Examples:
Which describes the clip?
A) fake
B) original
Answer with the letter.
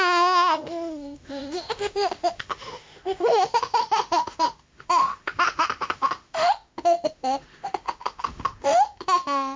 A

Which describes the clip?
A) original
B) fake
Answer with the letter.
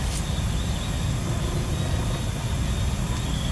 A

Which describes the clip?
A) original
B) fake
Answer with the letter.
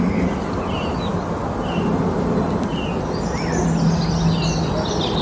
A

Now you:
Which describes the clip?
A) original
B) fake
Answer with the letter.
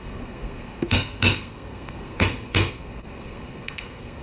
B